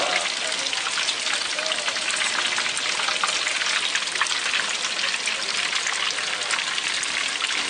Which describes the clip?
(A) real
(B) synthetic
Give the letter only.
A